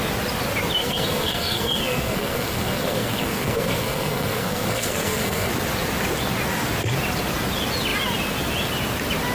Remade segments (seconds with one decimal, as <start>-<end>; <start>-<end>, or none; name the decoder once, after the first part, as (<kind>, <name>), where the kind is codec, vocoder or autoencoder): 0.8-5.5 (codec, SNAC)